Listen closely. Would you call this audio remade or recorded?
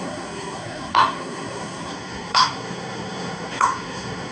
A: remade